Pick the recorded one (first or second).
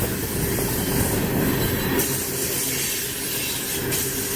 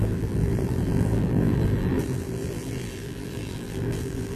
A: first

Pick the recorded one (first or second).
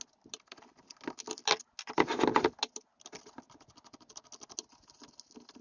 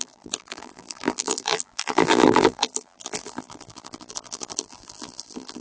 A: first